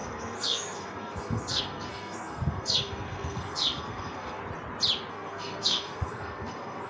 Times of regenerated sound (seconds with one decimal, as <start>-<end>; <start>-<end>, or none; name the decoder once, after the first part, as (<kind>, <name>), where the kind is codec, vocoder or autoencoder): 0.0-4.4 (codec, SNAC); 5.1-6.9